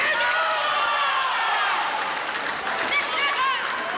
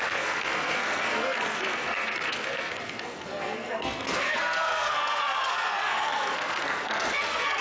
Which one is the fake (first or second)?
second